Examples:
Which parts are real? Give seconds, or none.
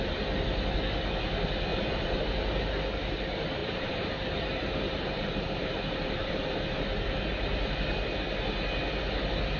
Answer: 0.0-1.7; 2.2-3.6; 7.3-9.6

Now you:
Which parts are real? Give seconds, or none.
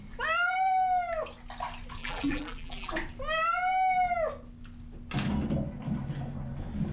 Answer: 0.0-2.0; 2.9-6.9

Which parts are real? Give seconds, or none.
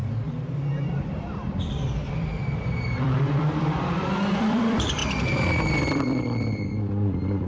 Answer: 5.0-5.8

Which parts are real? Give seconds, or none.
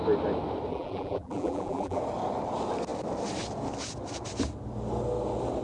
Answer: 0.0-0.7; 2.0-5.6